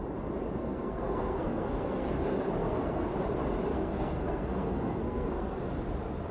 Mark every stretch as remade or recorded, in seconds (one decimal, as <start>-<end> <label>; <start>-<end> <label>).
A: 0.0-0.6 recorded; 0.6-3.1 remade; 3.1-3.7 recorded; 3.7-5.6 remade; 5.6-6.3 recorded